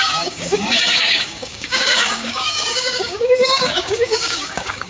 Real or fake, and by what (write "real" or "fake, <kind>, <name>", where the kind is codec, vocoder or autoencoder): fake, codec, DAC